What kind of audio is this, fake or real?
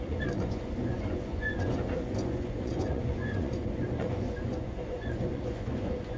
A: fake